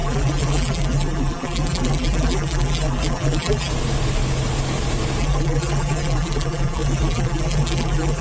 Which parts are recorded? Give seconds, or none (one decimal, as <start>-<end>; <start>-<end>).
3.7-5.2